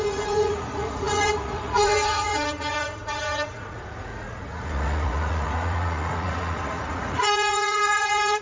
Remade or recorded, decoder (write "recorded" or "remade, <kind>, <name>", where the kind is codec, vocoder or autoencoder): remade, vocoder, Vocos